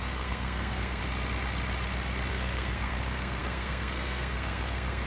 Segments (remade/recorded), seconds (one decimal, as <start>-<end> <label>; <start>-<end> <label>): 0.0-1.0 remade; 1.0-2.3 recorded; 2.3-5.1 remade